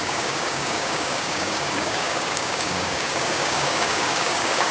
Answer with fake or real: fake